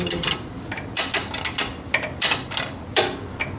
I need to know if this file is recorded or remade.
recorded